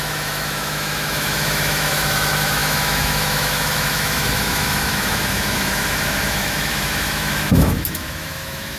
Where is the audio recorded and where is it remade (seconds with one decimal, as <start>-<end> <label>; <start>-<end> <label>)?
0.0-8.8 remade